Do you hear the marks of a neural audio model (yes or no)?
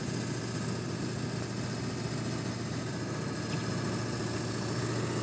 no